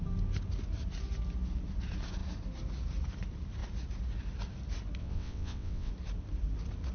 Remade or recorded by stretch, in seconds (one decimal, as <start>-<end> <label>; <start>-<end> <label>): 0.0-5.0 recorded; 5.0-5.9 remade; 5.9-6.9 recorded